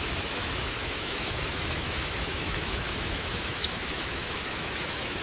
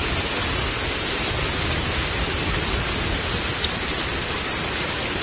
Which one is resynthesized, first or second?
first